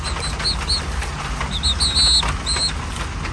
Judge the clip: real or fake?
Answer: real